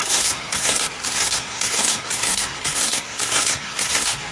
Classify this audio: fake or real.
fake